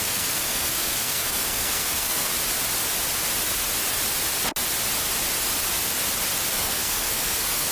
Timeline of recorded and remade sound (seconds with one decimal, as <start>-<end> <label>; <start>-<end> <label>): 0.0-2.3 remade; 2.3-6.5 recorded; 6.5-7.7 remade